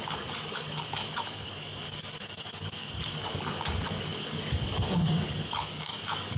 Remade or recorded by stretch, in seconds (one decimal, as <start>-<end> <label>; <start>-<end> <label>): 0.0-6.4 remade